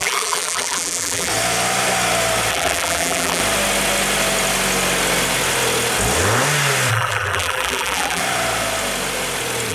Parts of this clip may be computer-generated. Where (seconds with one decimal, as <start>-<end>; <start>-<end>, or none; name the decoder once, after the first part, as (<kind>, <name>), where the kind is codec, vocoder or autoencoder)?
0.0-1.3 (vocoder, BigVGAN v2); 2.5-3.4; 6.9-8.2

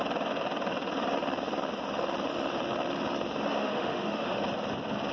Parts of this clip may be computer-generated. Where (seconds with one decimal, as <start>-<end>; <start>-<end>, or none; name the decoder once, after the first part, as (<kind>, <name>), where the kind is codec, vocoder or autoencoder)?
3.6-4.4 (autoencoder, DAC-VAE)

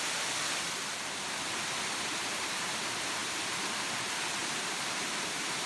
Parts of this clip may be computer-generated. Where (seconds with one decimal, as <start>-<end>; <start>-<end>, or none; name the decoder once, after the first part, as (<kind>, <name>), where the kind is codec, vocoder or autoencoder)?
4.4-5.7 (vocoder, BigVGAN v2)

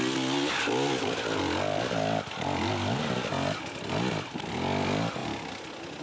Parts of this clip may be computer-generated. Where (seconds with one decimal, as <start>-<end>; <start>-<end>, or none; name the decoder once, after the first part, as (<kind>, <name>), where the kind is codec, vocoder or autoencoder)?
none

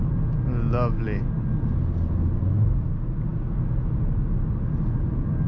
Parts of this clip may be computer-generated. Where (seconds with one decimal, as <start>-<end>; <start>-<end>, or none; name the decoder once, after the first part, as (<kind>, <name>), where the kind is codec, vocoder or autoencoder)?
none

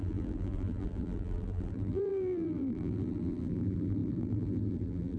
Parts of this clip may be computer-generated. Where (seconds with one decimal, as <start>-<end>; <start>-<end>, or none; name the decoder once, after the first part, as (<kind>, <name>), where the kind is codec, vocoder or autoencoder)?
0.0-5.2 (vocoder, BigVGAN v2)

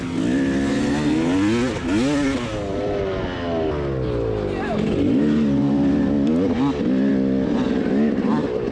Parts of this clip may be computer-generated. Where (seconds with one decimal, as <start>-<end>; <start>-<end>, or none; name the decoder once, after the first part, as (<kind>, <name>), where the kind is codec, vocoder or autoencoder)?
none